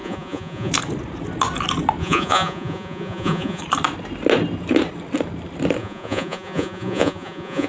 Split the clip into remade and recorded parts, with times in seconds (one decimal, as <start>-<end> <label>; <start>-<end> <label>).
0.0-0.7 remade; 0.7-2.0 recorded; 2.0-3.6 remade; 3.6-5.8 recorded; 5.8-7.7 remade